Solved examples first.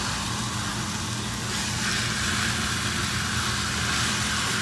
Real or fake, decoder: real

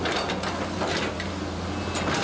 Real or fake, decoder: real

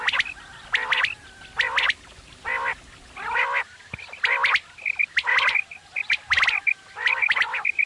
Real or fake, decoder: real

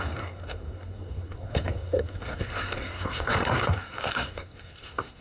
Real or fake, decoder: fake, codec, SNAC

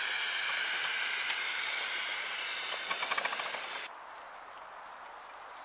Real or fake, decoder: real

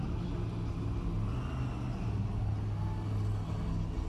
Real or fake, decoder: real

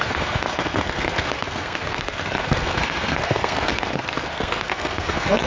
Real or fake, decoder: fake, codec, SNAC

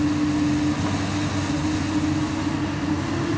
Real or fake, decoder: real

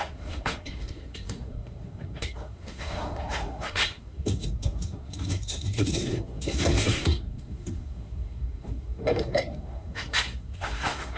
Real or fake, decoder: fake, codec, SNAC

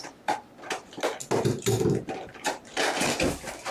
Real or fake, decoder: real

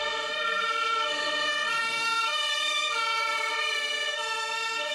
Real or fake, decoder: fake, codec, SNAC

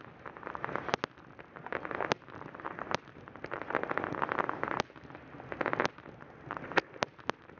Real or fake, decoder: real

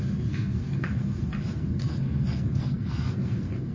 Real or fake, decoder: fake, codec, SNAC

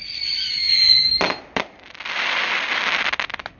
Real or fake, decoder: real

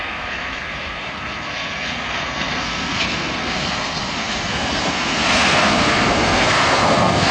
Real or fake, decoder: fake, codec, SNAC